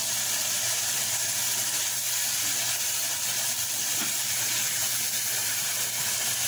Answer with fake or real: fake